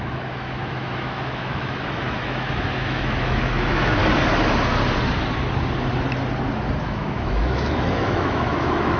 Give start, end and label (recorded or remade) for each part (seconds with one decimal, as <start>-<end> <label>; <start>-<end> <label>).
0.0-4.0 remade; 4.0-6.8 recorded; 6.8-9.0 remade